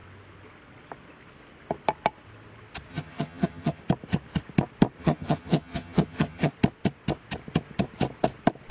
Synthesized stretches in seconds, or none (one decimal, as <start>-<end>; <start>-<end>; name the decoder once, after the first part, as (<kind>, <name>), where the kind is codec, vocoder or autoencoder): 2.9-3.8 (vocoder, HiFi-GAN); 5.0-6.5

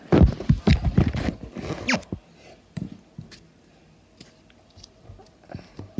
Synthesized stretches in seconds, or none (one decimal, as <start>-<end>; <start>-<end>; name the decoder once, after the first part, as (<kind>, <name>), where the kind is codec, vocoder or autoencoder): none

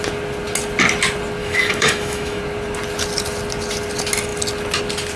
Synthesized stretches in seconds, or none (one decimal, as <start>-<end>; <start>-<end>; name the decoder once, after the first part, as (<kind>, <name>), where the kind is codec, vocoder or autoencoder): 1.4-2.4 (autoencoder, DAC-VAE)